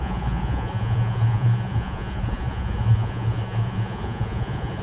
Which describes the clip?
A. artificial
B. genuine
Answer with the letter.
A